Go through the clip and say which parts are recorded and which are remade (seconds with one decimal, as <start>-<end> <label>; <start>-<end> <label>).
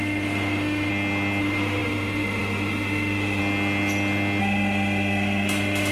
0.0-0.9 remade; 0.9-1.4 recorded; 1.4-3.4 remade; 3.4-4.4 recorded; 4.4-5.9 remade